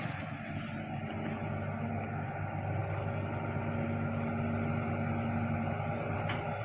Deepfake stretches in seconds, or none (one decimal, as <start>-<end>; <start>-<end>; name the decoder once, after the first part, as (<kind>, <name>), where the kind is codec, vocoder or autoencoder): none